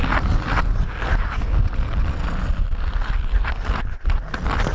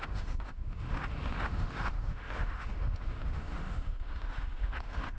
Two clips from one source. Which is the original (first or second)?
first